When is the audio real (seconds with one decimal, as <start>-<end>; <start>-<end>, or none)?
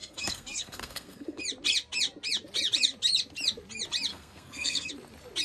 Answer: 1.4-4.1; 4.9-5.4